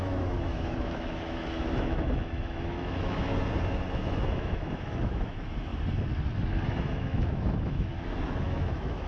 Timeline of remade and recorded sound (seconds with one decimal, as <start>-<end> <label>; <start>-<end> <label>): 0.0-3.3 remade; 3.3-4.0 recorded; 4.0-5.7 remade; 5.7-6.5 recorded; 6.5-7.9 remade; 7.9-8.4 recorded; 8.4-9.1 remade